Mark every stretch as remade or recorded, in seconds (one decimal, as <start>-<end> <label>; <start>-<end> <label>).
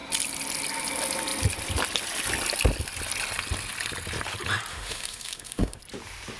0.0-4.7 recorded; 4.7-5.8 remade; 5.8-6.4 recorded